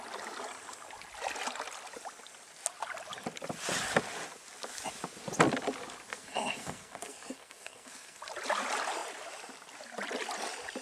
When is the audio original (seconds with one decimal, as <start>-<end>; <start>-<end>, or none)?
0.0-6.1; 8.2-10.8